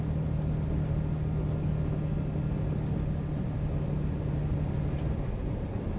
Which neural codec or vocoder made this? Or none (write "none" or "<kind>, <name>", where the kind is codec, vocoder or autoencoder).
none